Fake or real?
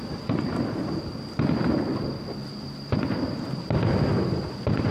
real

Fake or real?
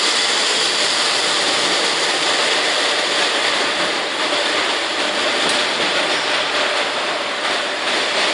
fake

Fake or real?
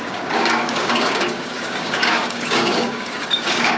fake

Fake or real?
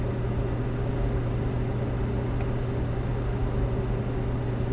real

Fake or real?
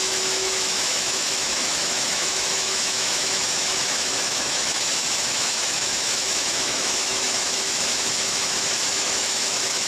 fake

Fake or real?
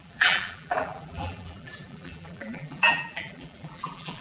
fake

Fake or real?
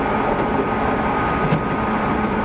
real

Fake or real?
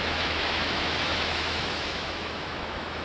fake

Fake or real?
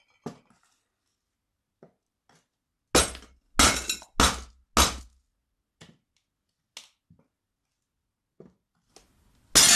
real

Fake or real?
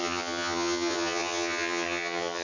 fake